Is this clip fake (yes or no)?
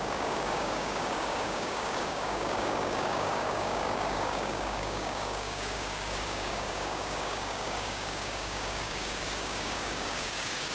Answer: yes